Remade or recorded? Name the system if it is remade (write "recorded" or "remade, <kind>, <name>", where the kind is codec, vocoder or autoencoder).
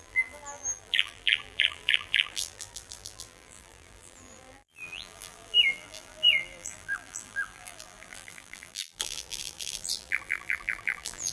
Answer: remade, vocoder, BigVGAN v2